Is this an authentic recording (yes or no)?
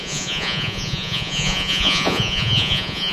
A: no